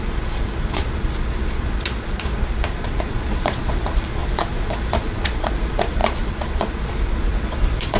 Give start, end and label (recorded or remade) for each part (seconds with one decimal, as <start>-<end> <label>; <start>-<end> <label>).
0.0-8.0 remade